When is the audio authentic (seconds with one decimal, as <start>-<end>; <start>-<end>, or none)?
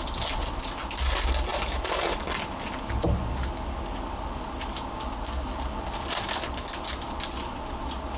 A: 0.0-8.2